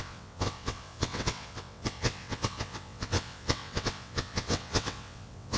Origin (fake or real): fake